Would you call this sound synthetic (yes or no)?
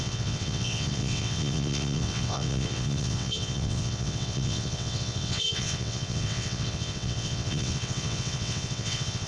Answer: yes